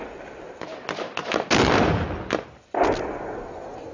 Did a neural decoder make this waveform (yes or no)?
no